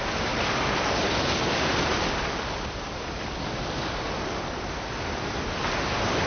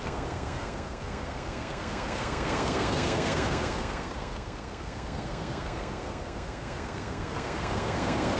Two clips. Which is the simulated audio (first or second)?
second